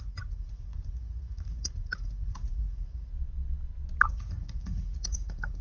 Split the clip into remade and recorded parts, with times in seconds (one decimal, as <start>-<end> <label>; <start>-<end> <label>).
0.0-3.1 remade; 3.1-4.1 recorded; 4.1-5.6 remade